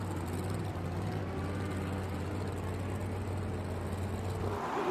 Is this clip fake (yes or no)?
no